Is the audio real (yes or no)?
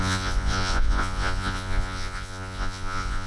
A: no